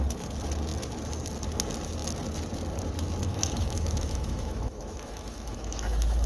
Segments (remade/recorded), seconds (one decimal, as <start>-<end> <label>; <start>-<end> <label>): 0.0-3.3 recorded; 3.3-6.3 remade